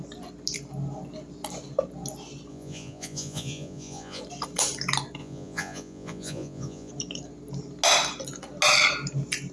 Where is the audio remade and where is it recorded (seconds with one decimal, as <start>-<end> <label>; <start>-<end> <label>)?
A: 0.0-2.5 recorded; 2.5-4.2 remade; 4.2-5.2 recorded; 5.2-6.9 remade; 6.9-9.5 recorded